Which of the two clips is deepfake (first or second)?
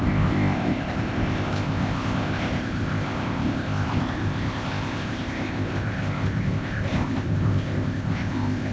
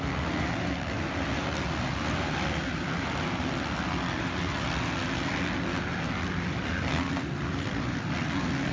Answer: first